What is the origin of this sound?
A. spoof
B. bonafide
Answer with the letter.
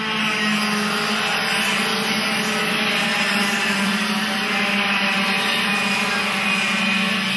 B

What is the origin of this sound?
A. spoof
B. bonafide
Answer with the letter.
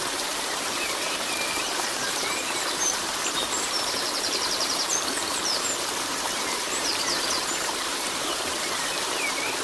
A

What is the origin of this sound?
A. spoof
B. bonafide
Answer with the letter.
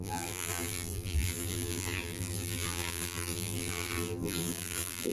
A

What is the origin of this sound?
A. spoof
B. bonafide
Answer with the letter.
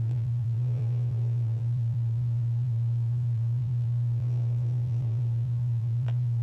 A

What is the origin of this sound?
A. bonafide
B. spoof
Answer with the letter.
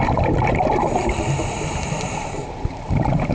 B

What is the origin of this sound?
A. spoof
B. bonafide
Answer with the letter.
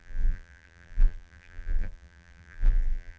A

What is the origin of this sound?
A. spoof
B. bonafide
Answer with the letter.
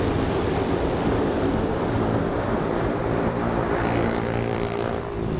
A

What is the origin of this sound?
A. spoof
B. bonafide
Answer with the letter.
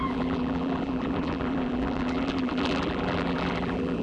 A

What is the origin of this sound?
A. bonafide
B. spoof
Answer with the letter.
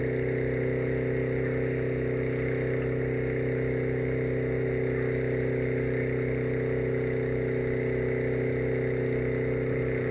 A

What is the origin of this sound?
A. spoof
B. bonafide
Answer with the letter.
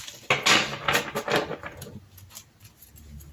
B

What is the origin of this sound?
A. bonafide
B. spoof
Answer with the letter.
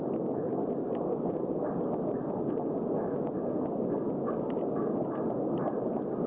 A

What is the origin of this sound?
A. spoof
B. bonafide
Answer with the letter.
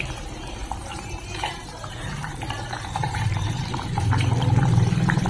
A